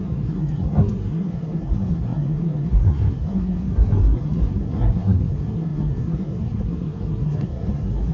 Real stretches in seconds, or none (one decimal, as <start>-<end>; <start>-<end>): none